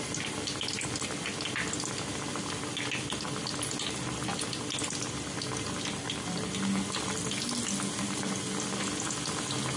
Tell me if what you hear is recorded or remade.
recorded